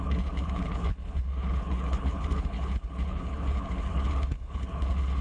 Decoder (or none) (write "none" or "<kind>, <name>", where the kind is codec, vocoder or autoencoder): codec, HILCodec